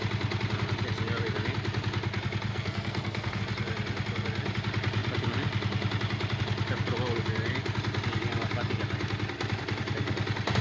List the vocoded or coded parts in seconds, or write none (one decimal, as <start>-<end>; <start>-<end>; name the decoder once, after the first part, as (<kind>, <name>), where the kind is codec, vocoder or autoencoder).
2.5-3.4 (codec, SNAC)